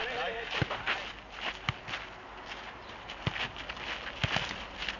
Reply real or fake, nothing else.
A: real